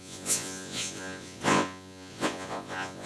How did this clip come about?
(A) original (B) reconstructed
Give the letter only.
B